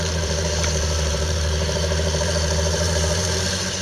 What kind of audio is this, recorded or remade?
remade